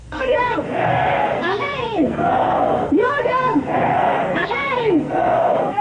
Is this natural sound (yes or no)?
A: no